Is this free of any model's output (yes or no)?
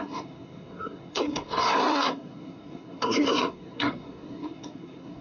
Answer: no